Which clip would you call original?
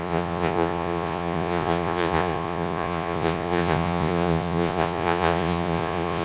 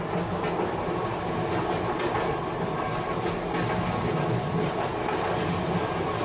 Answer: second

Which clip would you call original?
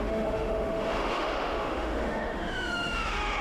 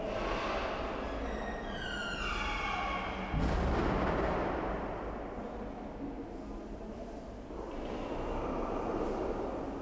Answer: second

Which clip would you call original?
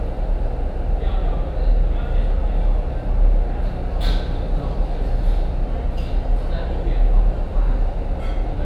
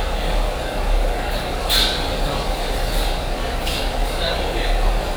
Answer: first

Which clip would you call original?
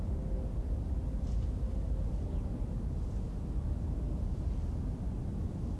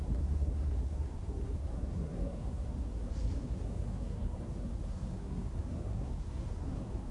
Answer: first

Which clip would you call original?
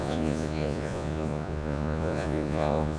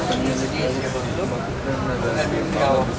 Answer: second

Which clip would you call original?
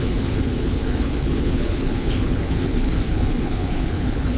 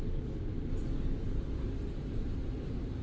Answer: second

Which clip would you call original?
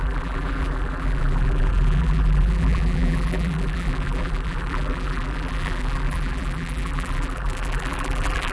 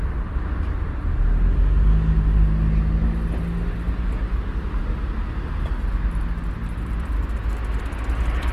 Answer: second